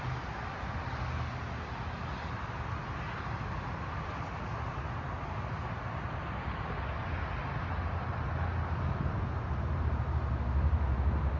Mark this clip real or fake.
real